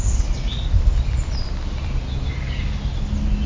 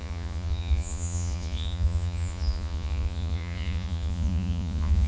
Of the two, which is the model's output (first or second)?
second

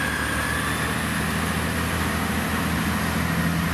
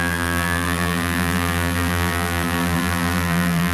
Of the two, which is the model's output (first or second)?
second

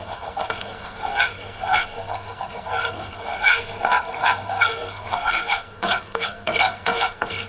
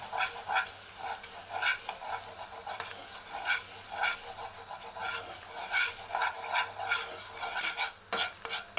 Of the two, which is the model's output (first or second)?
first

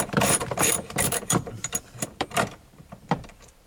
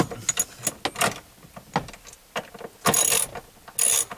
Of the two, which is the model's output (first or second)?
first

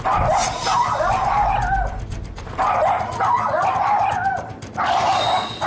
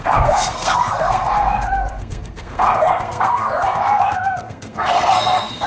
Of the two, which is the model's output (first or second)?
second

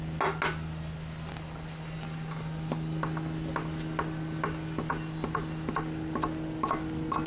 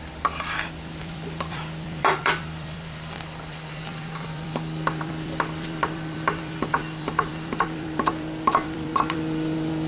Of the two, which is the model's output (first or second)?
second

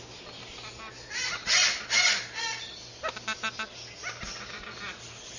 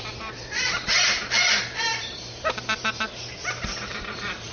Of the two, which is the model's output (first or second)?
second